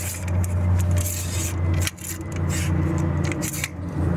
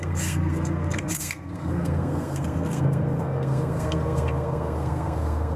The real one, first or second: first